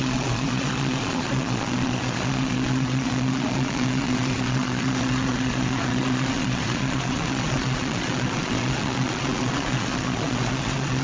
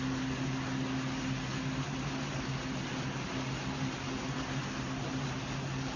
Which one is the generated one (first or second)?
first